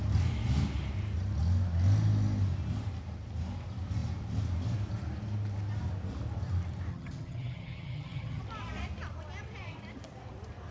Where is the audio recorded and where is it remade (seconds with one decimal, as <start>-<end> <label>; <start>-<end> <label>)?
0.0-6.9 recorded; 6.9-8.4 remade; 8.4-10.7 recorded

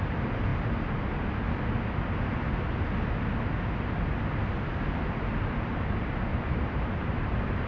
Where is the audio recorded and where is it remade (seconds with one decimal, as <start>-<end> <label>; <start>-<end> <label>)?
0.0-6.3 recorded; 6.3-7.7 remade